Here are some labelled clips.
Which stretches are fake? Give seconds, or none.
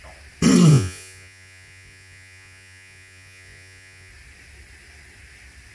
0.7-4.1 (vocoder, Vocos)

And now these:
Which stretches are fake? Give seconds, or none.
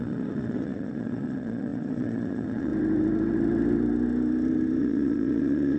0.0-2.7 (vocoder, Vocos); 4.8-5.8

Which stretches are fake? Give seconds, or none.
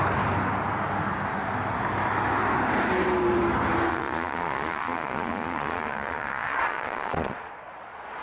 3.9-8.2 (vocoder, Vocos)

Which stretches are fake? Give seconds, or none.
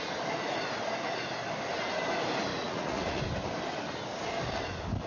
2.5-3.2 (vocoder, Vocos)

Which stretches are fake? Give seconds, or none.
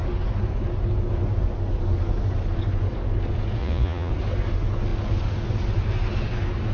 3.6-4.1 (vocoder, Vocos)